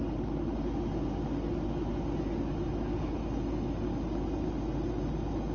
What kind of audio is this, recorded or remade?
recorded